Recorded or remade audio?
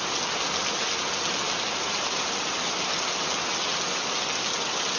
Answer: recorded